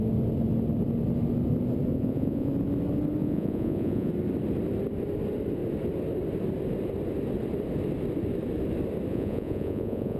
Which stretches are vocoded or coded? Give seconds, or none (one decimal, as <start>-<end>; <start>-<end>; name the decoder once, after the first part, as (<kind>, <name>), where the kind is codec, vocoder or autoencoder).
1.9-2.5 (vocoder, Vocos); 3.2-4.1; 9.1-10.2